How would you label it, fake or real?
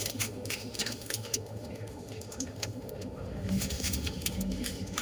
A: fake